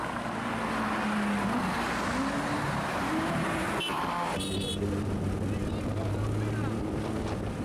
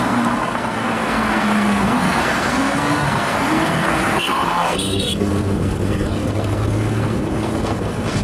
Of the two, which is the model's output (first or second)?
second